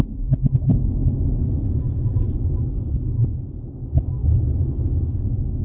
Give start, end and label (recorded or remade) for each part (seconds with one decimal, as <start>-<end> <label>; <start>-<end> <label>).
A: 0.0-5.6 recorded